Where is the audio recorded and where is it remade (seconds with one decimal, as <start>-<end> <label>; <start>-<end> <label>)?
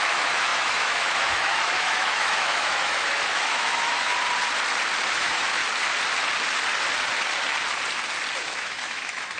0.0-4.1 remade; 4.1-5.1 recorded; 5.1-5.6 remade; 5.6-8.4 recorded; 8.4-9.4 remade